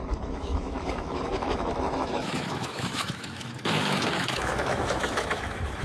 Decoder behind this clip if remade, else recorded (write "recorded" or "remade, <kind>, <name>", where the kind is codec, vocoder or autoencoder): remade, autoencoder, DAC-VAE